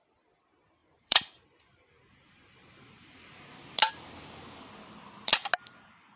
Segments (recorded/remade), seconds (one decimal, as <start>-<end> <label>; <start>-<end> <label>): 0.0-0.8 recorded; 0.8-3.4 remade; 3.4-6.2 recorded